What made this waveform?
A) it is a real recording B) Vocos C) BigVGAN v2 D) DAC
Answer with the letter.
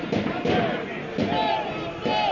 A